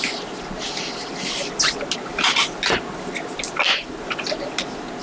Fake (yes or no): no